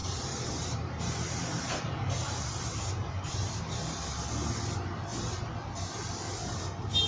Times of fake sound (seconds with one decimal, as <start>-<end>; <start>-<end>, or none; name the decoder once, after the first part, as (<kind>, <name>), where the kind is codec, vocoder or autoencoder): 0.0-3.6 (vocoder, BigVGAN v2)